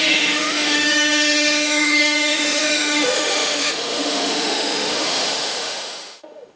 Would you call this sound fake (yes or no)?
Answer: yes